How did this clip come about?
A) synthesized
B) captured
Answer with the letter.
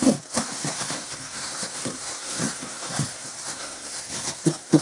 A